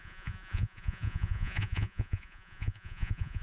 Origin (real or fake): fake